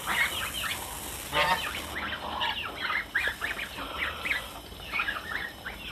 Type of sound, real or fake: real